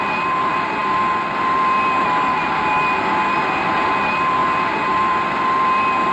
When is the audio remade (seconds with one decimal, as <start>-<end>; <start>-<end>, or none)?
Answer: none